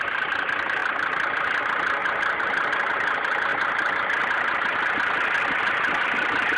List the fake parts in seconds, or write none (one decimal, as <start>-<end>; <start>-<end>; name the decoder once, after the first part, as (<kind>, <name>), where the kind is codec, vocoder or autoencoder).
none